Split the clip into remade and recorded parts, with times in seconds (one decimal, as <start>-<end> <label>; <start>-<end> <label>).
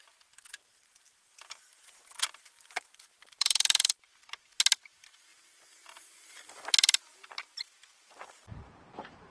0.0-9.3 remade